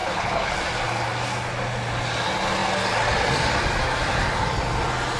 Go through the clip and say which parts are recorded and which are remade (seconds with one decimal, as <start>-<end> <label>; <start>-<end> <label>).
0.0-0.6 remade; 0.6-5.2 recorded